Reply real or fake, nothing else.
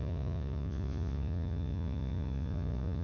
fake